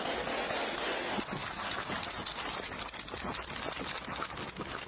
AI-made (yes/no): no